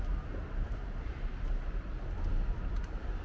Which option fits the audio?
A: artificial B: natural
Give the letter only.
B